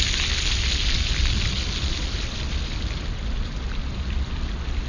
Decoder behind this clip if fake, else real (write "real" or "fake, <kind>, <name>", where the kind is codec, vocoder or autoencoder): real